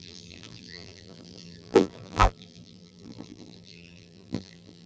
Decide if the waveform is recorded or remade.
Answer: remade